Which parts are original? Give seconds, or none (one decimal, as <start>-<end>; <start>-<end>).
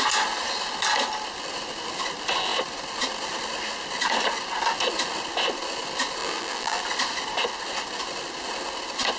0.0-6.2; 6.8-9.2